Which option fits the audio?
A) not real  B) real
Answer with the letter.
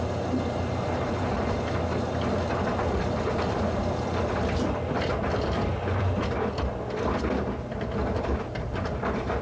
A